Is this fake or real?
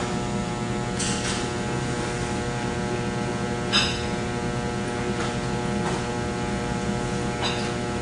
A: real